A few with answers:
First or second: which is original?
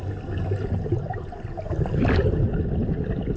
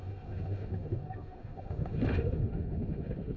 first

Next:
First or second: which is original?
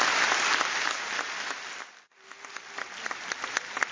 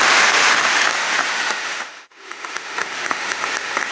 first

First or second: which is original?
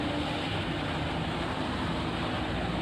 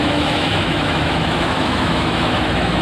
first